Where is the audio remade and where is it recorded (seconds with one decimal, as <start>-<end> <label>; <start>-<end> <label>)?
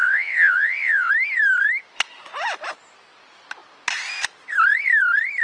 0.0-1.1 remade; 1.1-5.4 recorded